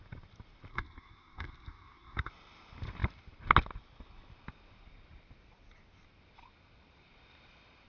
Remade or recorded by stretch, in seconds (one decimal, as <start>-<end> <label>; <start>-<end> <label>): 0.0-0.7 recorded; 0.7-2.3 remade; 2.3-7.9 recorded